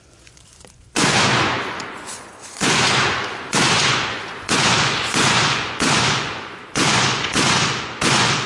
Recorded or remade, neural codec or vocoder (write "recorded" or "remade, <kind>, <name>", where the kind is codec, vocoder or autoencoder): remade, vocoder, Vocos